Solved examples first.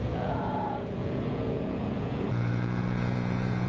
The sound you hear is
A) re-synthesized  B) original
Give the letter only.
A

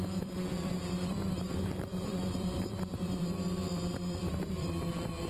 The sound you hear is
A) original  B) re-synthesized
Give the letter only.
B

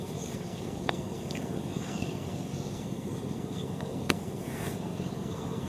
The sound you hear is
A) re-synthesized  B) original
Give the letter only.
A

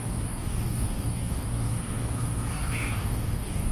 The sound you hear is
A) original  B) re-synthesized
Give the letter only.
B